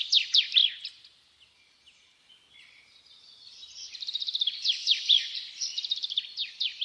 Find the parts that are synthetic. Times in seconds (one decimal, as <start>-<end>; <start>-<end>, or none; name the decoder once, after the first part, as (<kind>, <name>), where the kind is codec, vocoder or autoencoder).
0.0-0.6 (vocoder, BigVGAN v2); 2.2-6.8